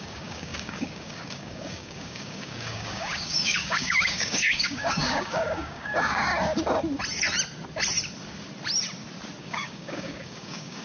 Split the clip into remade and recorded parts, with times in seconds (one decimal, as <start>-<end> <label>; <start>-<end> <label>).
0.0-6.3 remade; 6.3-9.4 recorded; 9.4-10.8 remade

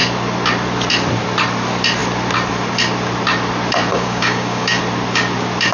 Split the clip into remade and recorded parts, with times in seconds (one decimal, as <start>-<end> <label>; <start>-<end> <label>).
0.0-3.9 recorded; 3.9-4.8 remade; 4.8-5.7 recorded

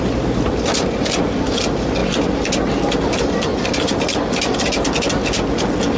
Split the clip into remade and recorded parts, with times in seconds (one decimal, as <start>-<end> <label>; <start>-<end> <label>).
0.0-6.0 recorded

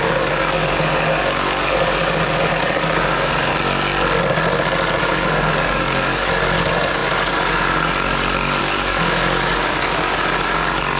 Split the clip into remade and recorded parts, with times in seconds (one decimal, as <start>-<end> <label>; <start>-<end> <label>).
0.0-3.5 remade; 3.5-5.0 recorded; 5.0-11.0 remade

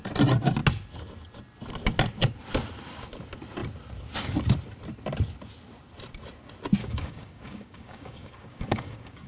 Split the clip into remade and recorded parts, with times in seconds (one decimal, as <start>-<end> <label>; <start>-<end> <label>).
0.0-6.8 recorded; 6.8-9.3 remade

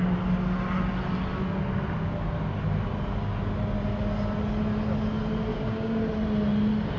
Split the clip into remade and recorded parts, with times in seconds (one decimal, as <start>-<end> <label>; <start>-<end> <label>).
0.0-5.5 recorded; 5.5-6.0 remade; 6.0-7.0 recorded